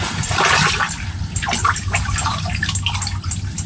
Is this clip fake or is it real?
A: real